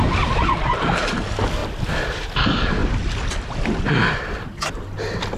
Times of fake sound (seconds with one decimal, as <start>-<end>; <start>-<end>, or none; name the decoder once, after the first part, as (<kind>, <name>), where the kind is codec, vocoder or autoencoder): 1.6-2.3 (vocoder, BigVGAN v2); 2.8-3.5